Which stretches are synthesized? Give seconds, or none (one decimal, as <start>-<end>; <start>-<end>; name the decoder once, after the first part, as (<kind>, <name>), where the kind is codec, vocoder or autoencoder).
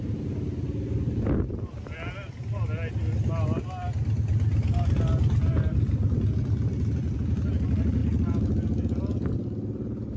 none